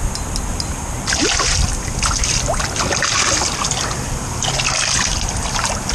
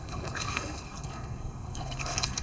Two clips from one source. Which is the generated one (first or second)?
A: second